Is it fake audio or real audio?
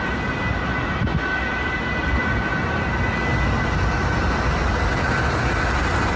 real